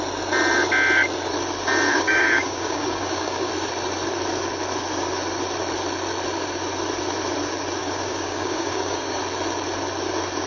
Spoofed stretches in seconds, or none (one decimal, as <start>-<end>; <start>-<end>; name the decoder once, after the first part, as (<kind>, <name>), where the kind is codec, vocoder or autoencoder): 1.9-3.5 (codec, DAC); 7.8-9.2